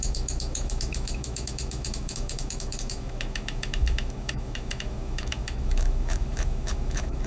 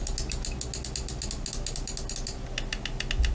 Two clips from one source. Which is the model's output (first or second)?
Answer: first